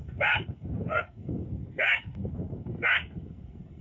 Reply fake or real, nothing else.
fake